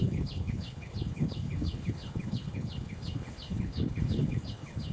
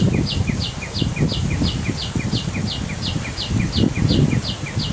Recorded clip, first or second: second